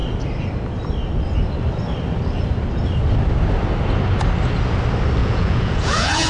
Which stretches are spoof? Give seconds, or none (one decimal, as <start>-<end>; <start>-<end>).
5.2-6.3